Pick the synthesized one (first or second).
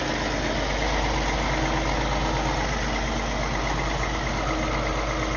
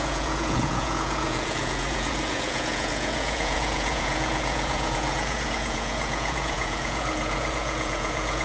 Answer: second